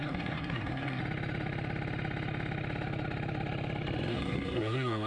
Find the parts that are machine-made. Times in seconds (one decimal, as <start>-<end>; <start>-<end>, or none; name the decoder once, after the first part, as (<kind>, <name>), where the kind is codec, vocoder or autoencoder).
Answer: 0.0-1.0 (codec, SNAC); 4.1-5.1